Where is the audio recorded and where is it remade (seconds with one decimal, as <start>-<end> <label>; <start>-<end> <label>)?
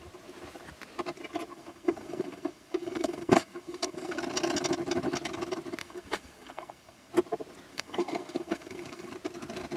0.0-1.5 recorded; 1.5-4.2 remade; 4.2-5.8 recorded; 5.8-7.1 remade; 7.1-7.7 recorded; 7.7-9.1 remade; 9.1-9.8 recorded